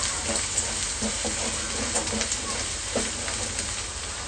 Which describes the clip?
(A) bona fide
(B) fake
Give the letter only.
A